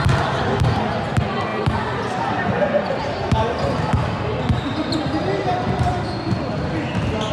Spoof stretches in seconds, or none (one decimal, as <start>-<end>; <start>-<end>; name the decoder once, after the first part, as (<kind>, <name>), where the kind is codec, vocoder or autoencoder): none